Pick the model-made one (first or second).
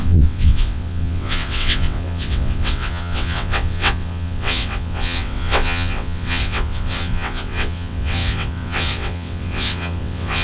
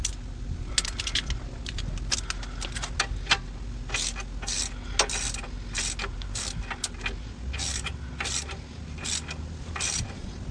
first